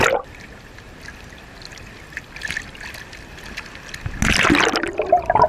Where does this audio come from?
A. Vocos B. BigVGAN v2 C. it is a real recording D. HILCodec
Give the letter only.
C